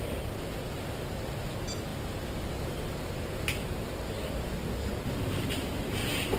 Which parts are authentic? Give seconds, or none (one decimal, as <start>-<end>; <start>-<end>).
0.0-6.4